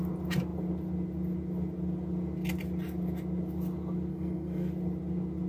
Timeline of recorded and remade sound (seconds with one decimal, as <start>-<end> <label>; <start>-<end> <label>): 0.0-4.1 recorded; 4.1-4.7 remade; 4.7-5.5 recorded